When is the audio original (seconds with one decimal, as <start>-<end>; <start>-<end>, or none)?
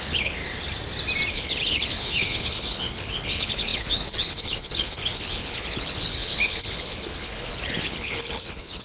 0.4-1.3